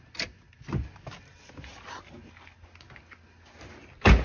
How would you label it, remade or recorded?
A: recorded